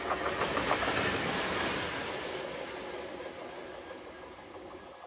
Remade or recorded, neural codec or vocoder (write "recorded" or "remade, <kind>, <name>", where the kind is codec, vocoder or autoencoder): recorded